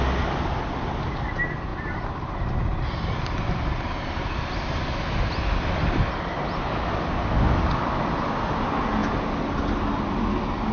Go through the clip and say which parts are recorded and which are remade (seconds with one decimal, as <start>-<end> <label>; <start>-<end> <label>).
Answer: 0.0-10.7 recorded